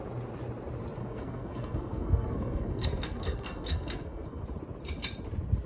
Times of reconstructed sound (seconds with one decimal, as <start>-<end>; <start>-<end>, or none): 1.0-4.4